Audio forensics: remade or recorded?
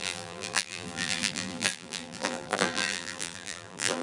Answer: remade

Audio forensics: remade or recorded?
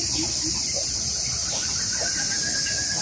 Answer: remade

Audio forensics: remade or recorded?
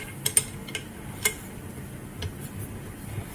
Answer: recorded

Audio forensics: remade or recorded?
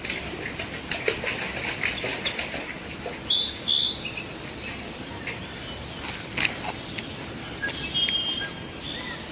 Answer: recorded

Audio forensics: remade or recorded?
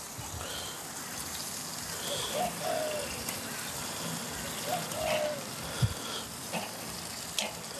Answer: recorded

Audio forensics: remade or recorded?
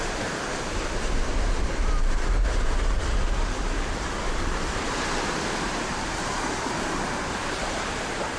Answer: remade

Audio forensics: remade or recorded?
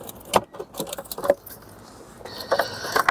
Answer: recorded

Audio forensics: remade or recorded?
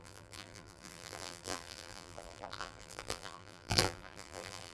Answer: remade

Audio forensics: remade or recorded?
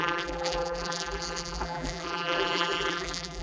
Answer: remade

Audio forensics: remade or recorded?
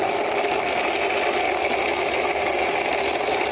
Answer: recorded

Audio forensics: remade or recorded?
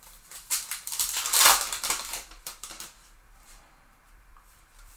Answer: remade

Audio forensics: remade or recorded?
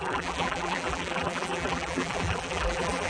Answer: remade